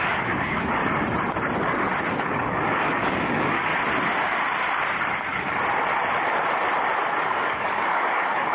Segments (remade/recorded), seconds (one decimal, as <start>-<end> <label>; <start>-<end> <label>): 0.0-0.8 remade; 0.8-2.2 recorded; 2.2-3.7 remade; 3.7-7.2 recorded; 7.2-8.5 remade